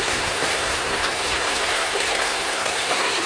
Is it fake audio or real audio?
fake